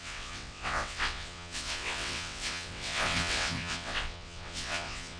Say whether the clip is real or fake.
fake